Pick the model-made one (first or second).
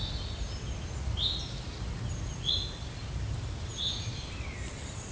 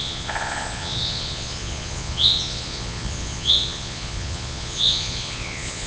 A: second